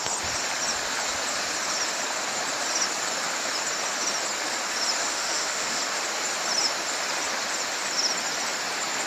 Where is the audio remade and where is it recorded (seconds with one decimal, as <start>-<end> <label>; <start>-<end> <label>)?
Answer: 0.0-5.0 recorded; 5.0-5.8 remade; 5.8-9.1 recorded